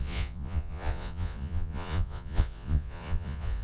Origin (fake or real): fake